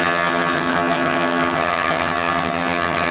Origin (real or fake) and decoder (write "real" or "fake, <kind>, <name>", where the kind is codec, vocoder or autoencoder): fake, vocoder, HiFi-GAN